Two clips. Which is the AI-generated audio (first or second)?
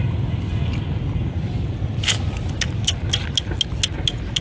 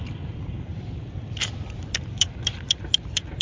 second